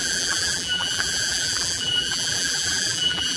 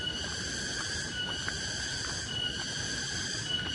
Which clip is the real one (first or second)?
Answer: second